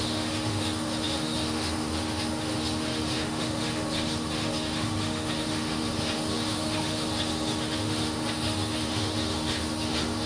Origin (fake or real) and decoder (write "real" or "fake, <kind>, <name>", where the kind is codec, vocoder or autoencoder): fake, autoencoder, DAC-VAE